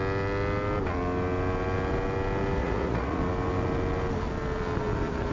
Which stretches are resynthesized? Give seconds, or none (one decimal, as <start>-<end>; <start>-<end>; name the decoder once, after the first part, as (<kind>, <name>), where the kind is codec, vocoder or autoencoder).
2.6-3.2 (vocoder, Vocos)